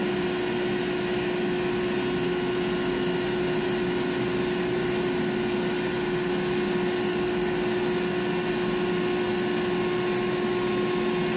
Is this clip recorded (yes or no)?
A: yes